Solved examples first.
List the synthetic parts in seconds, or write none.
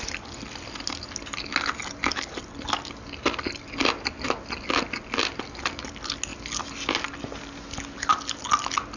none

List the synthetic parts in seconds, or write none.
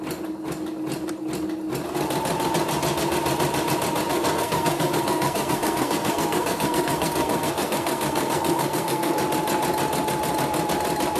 4.1-9.2 (codec, SNAC)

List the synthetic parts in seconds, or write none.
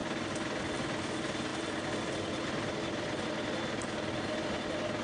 none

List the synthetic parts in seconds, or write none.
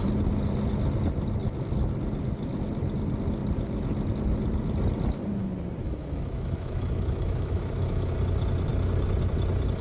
5.8-8.1 (autoencoder, DAC-VAE)